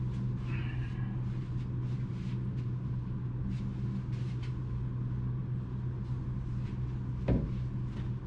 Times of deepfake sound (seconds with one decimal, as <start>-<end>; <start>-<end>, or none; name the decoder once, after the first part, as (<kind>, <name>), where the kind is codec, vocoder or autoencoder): none